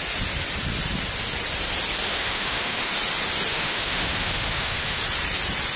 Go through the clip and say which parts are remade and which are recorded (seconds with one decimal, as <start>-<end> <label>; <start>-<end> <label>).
0.0-2.1 recorded; 2.1-2.9 remade; 2.9-3.5 recorded; 3.5-5.0 remade; 5.0-5.8 recorded